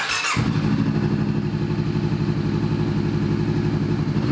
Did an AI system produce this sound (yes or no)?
no